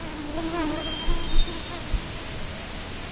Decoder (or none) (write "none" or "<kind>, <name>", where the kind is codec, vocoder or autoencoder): none